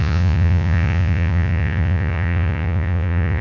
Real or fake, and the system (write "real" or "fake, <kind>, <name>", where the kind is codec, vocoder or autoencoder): fake, vocoder, Vocos